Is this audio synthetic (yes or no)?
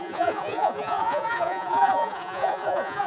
yes